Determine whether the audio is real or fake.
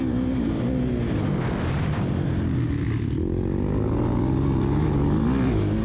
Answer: real